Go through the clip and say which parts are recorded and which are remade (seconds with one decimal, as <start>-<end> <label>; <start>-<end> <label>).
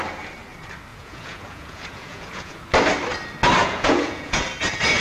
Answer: 0.0-0.9 recorded; 0.9-2.6 remade; 2.6-3.6 recorded; 3.6-4.4 remade; 4.4-5.0 recorded